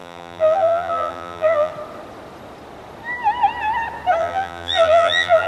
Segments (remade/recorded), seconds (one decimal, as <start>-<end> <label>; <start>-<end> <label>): 0.0-1.7 remade; 1.7-4.2 recorded; 4.2-5.5 remade